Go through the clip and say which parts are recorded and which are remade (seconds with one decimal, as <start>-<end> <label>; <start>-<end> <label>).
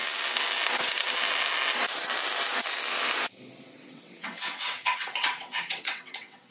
0.0-3.8 recorded; 3.8-6.5 remade